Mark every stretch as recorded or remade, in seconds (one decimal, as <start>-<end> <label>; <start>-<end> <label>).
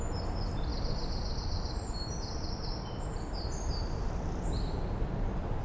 0.0-0.7 recorded; 0.7-4.1 remade; 4.1-5.6 recorded